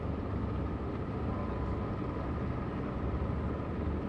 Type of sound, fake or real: real